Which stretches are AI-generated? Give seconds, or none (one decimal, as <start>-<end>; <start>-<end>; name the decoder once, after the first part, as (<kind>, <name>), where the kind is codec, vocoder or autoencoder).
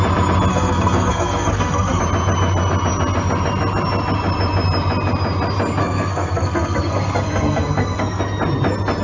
0.5-2.0 (codec, SNAC); 5.8-8.2